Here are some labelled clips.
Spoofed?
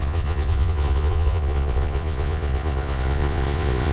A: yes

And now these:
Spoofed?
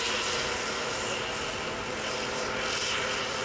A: no